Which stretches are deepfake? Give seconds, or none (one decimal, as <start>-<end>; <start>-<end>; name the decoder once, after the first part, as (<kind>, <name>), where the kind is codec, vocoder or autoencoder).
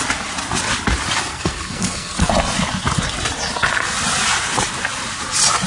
1.3-2.3 (codec, SNAC)